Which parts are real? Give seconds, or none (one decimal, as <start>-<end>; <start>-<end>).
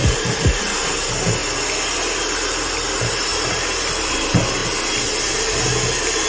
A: 0.6-3.3; 4.1-6.3